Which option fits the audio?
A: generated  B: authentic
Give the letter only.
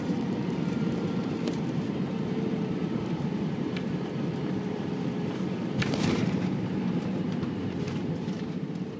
A